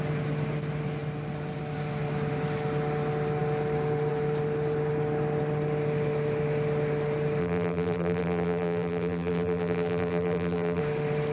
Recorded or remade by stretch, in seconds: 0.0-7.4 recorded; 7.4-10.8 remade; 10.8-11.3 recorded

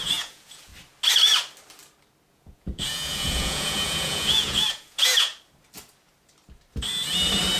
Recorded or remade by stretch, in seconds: 0.0-0.7 remade; 0.7-2.3 recorded; 2.3-5.3 remade; 5.3-7.6 recorded

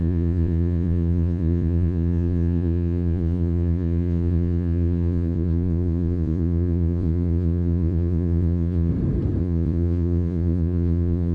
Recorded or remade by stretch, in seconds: 0.0-8.9 remade; 8.9-9.4 recorded; 9.4-11.3 remade

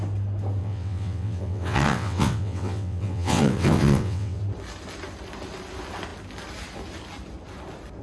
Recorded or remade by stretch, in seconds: 0.0-0.6 recorded; 0.6-4.4 remade; 4.4-8.0 recorded

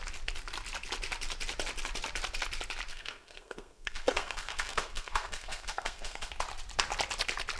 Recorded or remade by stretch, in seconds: 0.0-2.9 recorded; 2.9-6.3 remade; 6.3-7.6 recorded

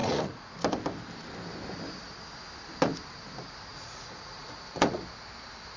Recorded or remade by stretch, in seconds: 0.0-0.6 remade; 0.6-3.7 recorded; 3.7-5.0 remade; 5.0-5.8 recorded

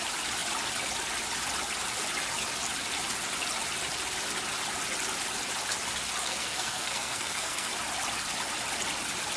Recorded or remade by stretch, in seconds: 0.0-6.2 recorded; 6.2-7.7 remade; 7.7-9.4 recorded

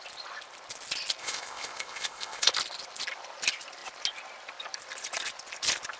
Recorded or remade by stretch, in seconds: 0.0-1.2 recorded; 1.2-2.5 remade; 2.5-6.0 recorded